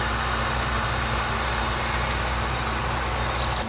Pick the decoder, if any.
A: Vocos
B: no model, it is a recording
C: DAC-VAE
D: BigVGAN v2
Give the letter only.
B